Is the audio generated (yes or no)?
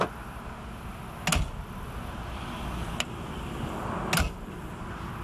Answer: no